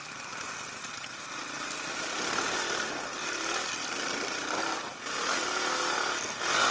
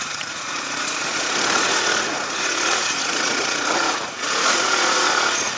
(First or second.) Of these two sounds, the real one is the first